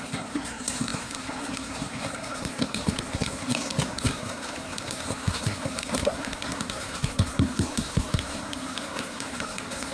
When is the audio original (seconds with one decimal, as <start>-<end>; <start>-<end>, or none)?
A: none